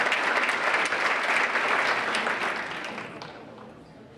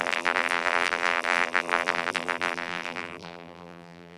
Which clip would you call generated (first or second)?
second